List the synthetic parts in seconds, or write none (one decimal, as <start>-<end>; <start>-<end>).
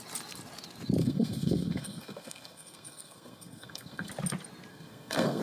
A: 1.0-4.1; 4.7-5.4